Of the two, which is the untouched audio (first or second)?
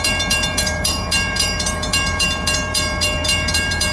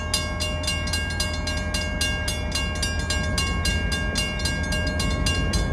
second